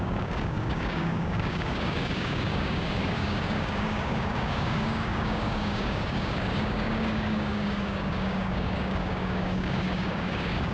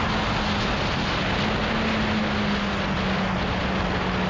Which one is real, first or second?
second